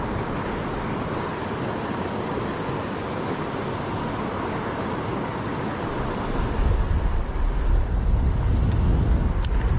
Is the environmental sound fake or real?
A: real